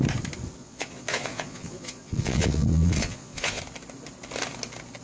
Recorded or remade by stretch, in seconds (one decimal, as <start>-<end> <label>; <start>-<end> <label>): 0.0-0.6 recorded; 0.6-3.6 remade; 3.6-5.0 recorded